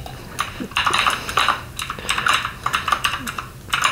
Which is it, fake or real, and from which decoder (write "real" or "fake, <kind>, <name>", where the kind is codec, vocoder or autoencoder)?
real